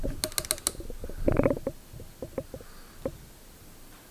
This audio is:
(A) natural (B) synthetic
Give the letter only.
A